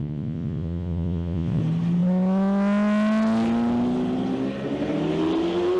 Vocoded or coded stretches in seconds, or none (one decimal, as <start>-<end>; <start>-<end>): 0.0-1.6

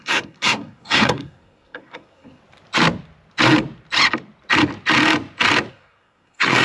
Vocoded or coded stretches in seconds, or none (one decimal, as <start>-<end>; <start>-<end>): 0.0-2.4; 5.7-6.6

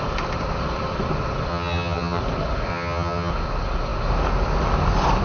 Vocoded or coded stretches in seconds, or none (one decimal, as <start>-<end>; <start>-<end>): 1.5-2.2; 2.7-3.3

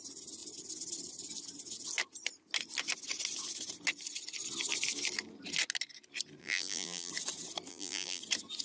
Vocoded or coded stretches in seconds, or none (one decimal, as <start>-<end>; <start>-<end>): 6.4-7.1; 7.7-8.2

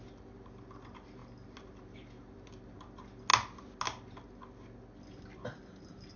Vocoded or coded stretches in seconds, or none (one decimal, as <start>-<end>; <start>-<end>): none